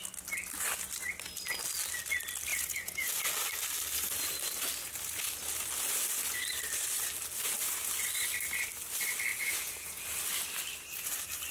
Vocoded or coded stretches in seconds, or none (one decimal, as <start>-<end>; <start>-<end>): 2.5-3.1; 9.3-10.0